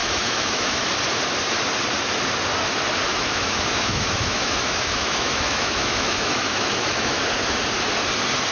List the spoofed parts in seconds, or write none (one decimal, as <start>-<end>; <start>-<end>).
0.0-0.8; 3.1-7.2